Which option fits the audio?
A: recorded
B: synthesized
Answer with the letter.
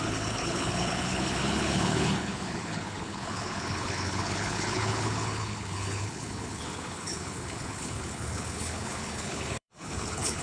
B